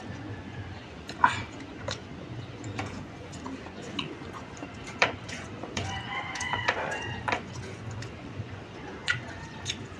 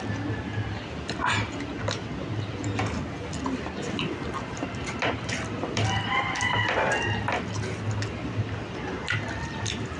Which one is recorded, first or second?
second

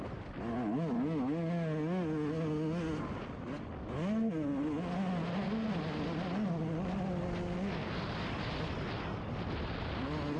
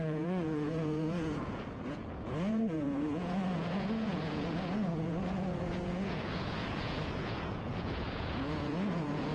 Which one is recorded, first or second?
first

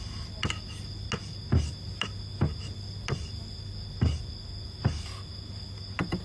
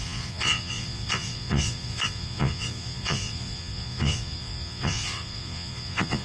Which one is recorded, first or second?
first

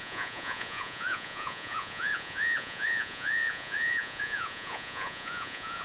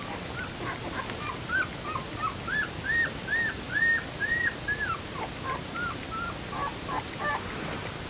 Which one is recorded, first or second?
second